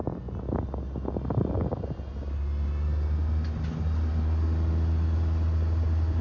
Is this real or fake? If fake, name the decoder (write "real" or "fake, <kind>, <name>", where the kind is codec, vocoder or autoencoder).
real